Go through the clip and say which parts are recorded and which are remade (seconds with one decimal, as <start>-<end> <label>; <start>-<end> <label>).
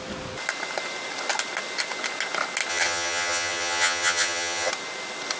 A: 0.0-2.7 recorded; 2.7-4.7 remade; 4.7-5.4 recorded